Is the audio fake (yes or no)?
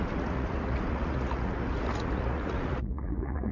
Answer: yes